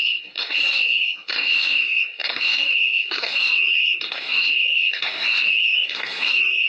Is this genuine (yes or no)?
no